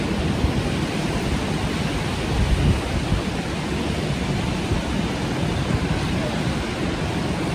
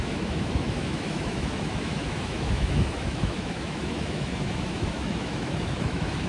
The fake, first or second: second